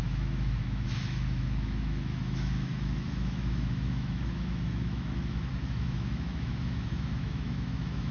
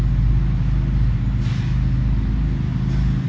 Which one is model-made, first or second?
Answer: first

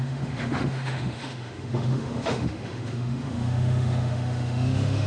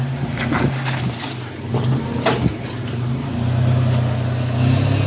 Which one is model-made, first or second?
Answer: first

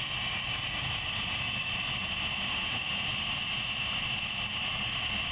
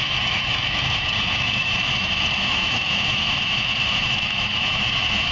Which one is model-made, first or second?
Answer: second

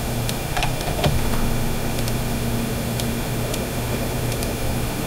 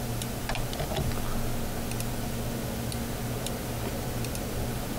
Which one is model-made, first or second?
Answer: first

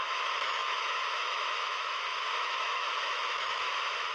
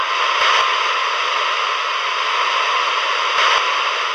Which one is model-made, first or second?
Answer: first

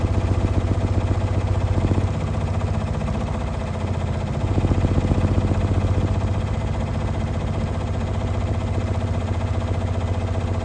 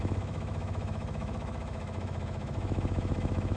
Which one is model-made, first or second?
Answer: second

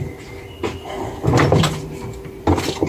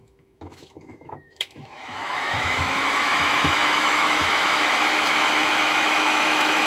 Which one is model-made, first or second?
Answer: second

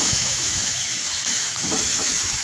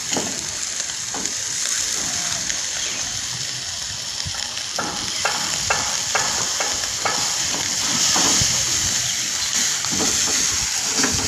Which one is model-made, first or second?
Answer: first